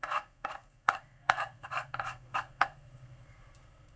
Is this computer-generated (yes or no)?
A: yes